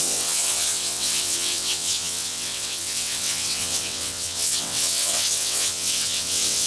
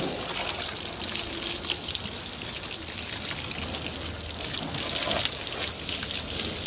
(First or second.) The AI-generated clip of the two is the first